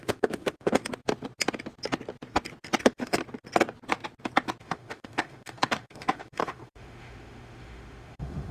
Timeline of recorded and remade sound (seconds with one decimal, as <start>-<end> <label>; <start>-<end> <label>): 0.0-0.8 remade; 0.8-2.8 recorded; 2.8-3.2 remade; 3.2-4.6 recorded; 4.6-8.5 remade